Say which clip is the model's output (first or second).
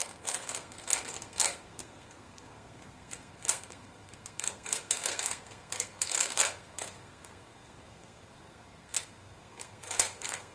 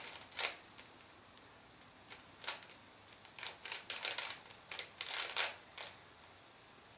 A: first